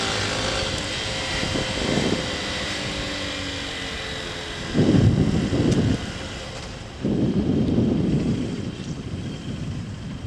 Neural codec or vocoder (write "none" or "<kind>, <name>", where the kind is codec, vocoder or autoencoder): none